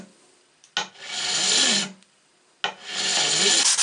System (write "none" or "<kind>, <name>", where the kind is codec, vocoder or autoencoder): none